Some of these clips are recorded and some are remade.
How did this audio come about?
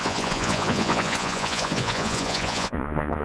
remade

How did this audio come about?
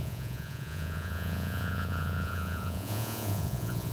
remade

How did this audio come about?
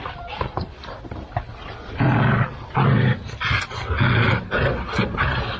recorded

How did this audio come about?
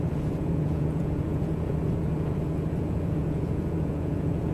remade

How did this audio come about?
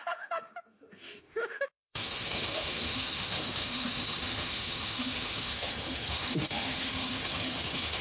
remade